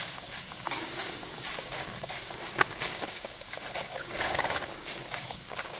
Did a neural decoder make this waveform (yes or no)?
yes